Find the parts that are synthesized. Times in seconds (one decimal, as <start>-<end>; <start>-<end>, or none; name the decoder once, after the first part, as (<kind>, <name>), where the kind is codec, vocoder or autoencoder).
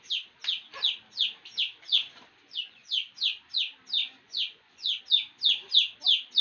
1.9-3.4 (vocoder, Vocos); 4.0-5.0